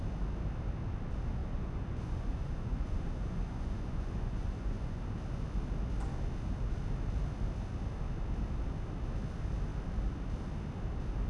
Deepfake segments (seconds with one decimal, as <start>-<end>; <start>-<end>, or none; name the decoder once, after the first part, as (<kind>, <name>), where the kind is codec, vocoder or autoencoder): 1.4-5.0 (vocoder, Vocos)

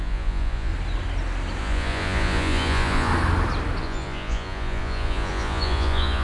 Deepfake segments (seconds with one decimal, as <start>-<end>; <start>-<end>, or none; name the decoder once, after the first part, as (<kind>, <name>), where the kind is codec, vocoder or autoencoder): 0.0-0.7 (vocoder, Vocos); 1.6-3.1; 3.8-6.2